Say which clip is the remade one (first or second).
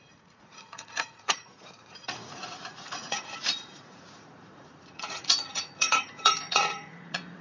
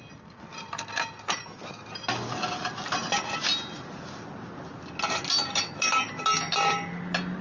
first